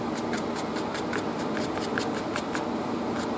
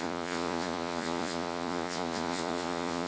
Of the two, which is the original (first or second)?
first